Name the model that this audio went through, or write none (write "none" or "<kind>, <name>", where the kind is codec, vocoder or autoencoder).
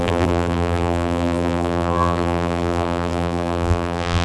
vocoder, BigVGAN v2